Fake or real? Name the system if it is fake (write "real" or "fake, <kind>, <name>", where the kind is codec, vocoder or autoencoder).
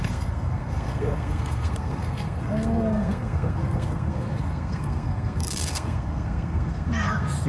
fake, codec, SNAC